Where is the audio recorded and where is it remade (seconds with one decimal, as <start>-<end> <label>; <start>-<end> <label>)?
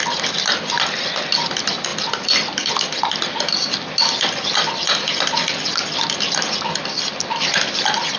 0.0-1.9 recorded; 1.9-2.7 remade; 2.7-8.2 recorded